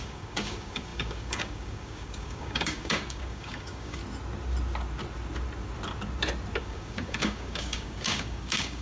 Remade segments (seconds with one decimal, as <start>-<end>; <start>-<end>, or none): 0.0-4.0; 6.6-8.8